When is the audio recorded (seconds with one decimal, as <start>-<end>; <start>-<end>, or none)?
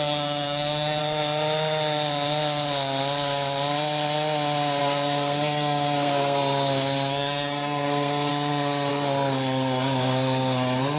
1.0-4.8; 8.3-8.9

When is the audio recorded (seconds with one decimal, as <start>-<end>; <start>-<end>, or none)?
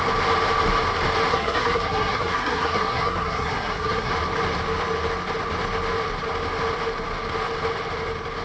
0.0-1.3; 4.1-8.4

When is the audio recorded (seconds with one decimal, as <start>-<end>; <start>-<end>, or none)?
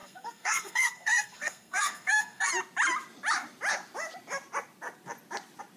2.5-5.8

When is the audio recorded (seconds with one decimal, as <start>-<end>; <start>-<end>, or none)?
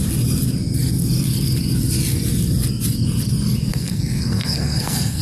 0.0-3.7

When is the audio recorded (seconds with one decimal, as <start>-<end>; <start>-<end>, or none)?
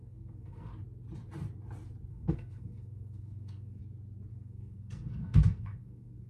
0.7-2.1; 3.8-4.3